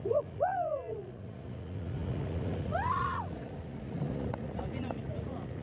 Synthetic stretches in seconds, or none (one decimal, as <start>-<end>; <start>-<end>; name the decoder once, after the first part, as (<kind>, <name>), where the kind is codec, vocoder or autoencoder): 0.0-5.6 (vocoder, Vocos)